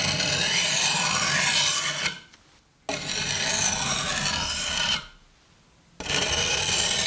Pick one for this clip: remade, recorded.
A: recorded